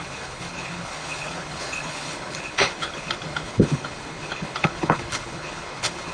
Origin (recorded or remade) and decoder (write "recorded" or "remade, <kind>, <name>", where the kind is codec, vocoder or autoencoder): remade, codec, HILCodec